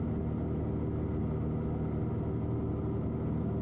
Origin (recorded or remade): recorded